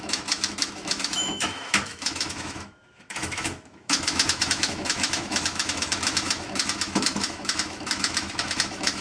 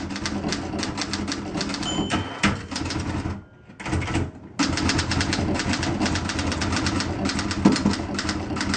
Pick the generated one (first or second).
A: first